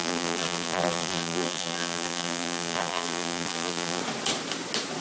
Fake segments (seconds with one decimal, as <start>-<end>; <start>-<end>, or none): 0.0-4.0

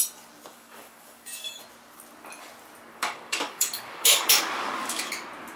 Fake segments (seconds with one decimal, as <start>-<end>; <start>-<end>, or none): 0.5-1.6; 2.9-5.1

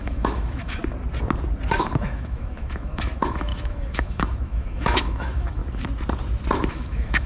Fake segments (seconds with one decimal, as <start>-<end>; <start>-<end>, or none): 0.0-0.8; 1.8-5.6; 6.7-7.3

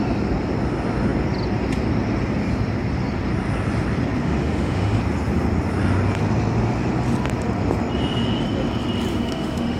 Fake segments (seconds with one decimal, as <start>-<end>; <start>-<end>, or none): 4.2-5.0; 9.1-9.8